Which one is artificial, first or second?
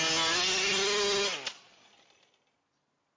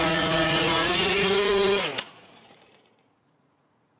second